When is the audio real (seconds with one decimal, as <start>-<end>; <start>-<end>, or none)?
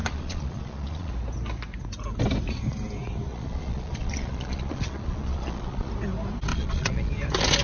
1.1-3.3; 5.9-6.5; 7.1-7.6